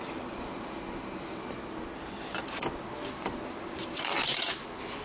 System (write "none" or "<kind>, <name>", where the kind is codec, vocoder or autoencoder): none